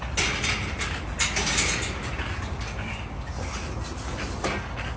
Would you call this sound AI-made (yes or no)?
no